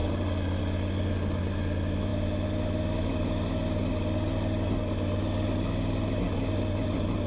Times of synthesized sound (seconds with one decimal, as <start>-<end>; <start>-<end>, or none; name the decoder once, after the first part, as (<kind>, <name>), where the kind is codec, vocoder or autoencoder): none